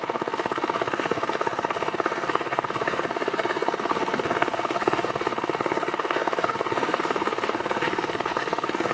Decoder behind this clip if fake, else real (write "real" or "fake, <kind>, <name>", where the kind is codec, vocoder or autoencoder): fake, codec, SNAC